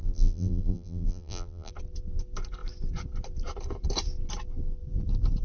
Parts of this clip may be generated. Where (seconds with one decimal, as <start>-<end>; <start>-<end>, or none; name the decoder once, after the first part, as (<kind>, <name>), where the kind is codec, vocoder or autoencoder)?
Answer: 0.0-1.7 (vocoder, BigVGAN v2)